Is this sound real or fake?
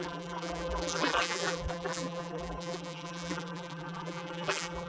fake